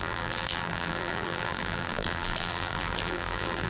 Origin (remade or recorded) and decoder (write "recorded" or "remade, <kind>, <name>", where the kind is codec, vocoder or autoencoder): remade, vocoder, BigVGAN v2